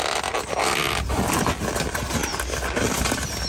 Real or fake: real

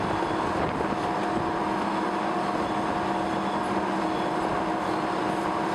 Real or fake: real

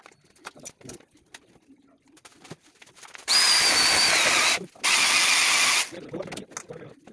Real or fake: real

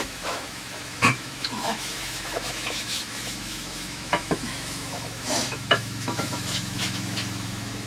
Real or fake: fake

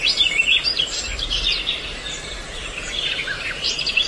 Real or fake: fake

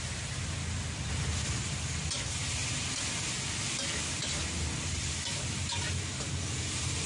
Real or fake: real